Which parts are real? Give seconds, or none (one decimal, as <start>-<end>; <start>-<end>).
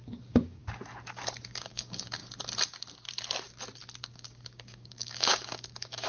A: 0.6-1.7; 2.2-4.0